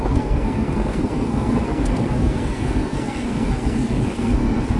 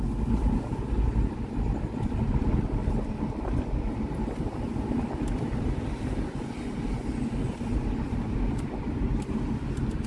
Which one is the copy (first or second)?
first